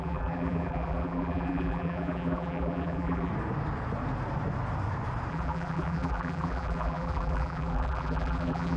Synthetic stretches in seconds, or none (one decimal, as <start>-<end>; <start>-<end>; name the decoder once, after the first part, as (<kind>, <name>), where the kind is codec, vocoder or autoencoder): 0.0-3.3 (vocoder, BigVGAN v2); 5.3-8.8

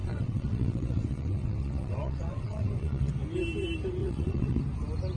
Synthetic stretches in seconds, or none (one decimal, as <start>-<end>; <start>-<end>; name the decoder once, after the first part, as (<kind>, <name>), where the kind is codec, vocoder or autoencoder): 0.0-3.1 (vocoder, WaveNeXt); 4.0-4.6

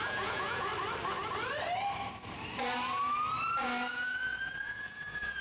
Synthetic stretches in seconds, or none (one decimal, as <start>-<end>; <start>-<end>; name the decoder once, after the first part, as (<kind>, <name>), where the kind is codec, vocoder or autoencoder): 0.0-0.7 (vocoder, Vocos); 3.9-5.4

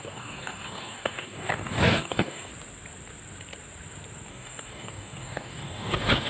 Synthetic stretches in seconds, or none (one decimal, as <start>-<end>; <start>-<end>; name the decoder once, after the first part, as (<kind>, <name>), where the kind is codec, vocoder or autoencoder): 0.0-2.5 (codec, DAC); 4.3-6.3

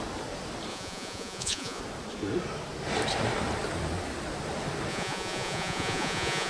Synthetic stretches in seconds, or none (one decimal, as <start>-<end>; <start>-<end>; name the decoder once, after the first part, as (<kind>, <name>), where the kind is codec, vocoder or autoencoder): 0.7-1.8 (vocoder, Vocos); 4.9-6.5

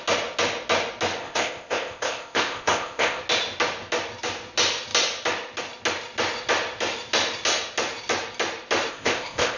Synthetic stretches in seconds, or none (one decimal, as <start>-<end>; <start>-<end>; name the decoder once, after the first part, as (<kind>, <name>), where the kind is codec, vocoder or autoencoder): 1.2-3.2 (codec, ZipCodec); 8.9-9.6

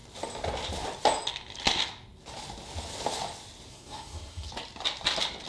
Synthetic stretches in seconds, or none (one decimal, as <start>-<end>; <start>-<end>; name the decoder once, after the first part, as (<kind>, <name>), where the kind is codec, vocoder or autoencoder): 3.7-4.5 (codec, SNAC)

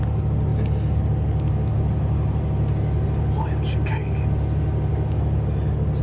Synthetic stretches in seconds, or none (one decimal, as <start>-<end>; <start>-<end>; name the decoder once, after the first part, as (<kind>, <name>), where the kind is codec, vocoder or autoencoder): none